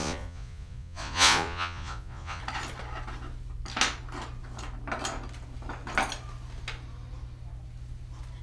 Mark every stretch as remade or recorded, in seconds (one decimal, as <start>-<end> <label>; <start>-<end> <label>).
0.0-2.4 remade; 2.4-8.4 recorded